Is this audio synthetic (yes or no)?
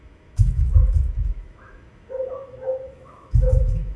yes